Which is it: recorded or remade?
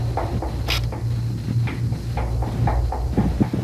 recorded